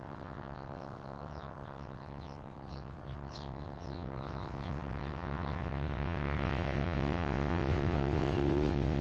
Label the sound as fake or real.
fake